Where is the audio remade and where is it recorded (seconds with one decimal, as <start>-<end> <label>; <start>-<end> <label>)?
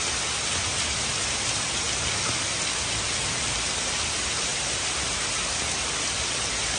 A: 0.0-6.8 recorded